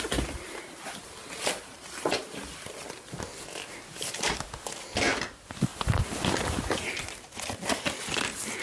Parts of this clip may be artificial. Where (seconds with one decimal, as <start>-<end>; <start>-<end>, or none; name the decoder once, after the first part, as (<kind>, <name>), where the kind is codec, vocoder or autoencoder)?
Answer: none

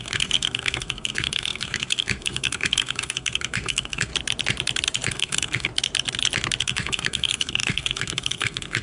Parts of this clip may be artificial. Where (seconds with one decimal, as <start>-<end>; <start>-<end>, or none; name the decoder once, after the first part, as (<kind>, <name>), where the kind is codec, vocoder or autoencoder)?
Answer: 0.0-4.1 (codec, SNAC); 5.1-5.7; 6.6-8.8

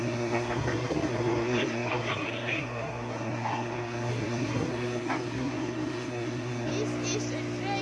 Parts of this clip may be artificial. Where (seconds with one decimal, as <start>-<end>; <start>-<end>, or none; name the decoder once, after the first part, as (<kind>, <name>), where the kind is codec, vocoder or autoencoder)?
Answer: 0.0-6.7 (codec, SNAC)

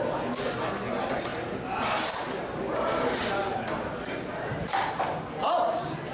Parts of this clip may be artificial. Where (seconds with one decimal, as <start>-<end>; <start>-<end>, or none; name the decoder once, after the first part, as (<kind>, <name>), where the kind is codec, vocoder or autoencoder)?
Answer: none